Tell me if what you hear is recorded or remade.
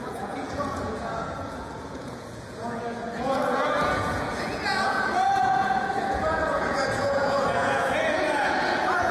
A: remade